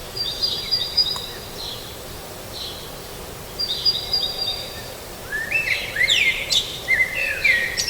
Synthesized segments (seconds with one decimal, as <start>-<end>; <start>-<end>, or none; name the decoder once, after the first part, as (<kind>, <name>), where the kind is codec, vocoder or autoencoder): 0.0-7.9 (vocoder, BigVGAN v2)